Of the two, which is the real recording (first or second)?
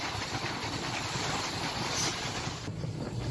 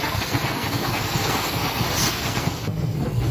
first